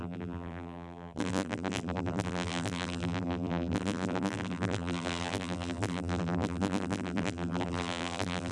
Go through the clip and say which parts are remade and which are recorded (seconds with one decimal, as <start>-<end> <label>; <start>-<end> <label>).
0.0-8.5 remade